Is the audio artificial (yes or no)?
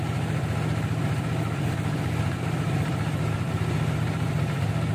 yes